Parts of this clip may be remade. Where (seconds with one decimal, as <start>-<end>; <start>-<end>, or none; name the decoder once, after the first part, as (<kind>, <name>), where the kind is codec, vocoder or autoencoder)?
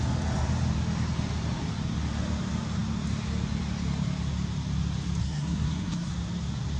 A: 5.2-6.1 (codec, SNAC)